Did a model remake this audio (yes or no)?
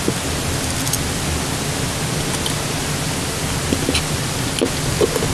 no